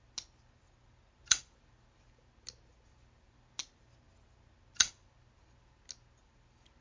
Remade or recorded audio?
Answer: recorded